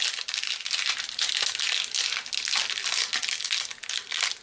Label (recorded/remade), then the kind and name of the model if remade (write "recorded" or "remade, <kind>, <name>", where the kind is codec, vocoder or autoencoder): recorded